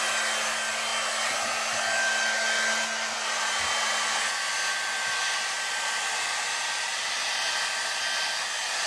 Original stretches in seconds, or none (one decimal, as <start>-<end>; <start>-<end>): 0.0-8.9